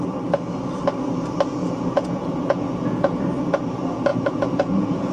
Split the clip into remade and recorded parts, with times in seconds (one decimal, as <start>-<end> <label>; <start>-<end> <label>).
0.0-1.6 recorded; 1.6-3.2 remade; 3.2-4.1 recorded; 4.1-5.1 remade